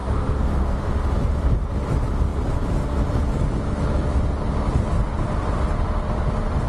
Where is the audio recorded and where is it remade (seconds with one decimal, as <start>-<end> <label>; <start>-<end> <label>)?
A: 0.0-0.9 remade; 0.9-6.7 recorded